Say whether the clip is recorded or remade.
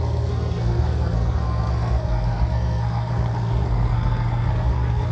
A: remade